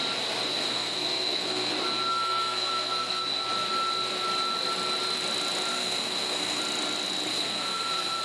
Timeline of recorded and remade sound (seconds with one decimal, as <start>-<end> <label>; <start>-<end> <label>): 0.0-0.6 recorded; 0.6-1.7 remade; 1.7-2.1 recorded; 2.1-3.2 remade; 3.2-5.7 recorded; 5.7-6.6 remade; 6.6-7.3 recorded; 7.3-8.2 remade